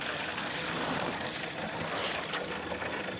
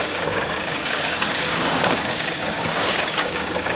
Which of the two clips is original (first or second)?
first